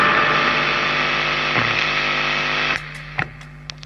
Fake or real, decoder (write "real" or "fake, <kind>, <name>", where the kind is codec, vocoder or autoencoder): real